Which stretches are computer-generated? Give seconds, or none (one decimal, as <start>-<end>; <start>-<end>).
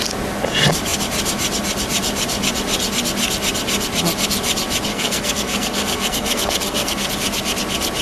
4.9-7.1